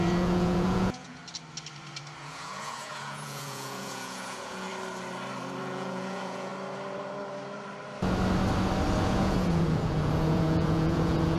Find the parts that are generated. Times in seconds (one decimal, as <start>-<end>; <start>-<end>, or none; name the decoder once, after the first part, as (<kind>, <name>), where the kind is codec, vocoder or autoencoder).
0.0-1.2 (vocoder, Vocos); 2.2-4.7; 5.6-6.5; 9.0-11.4